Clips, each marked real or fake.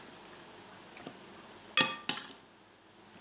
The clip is real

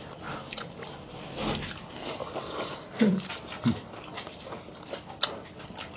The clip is real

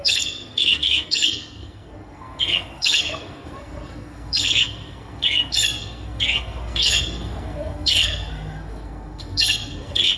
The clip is fake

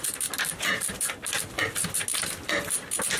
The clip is real